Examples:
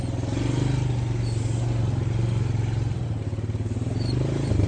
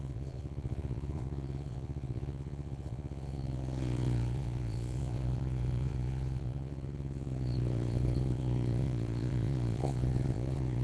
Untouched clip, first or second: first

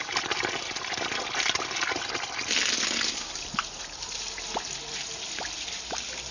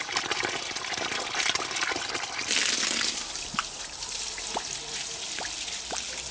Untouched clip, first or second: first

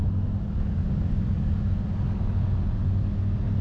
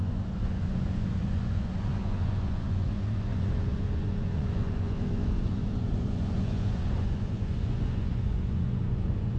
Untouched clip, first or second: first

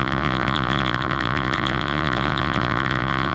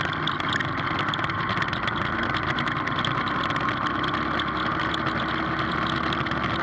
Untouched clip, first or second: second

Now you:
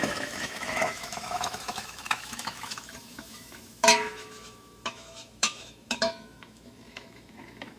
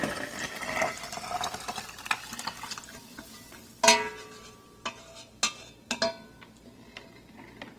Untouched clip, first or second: second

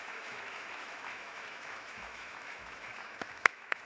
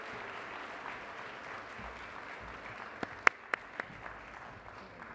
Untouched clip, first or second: second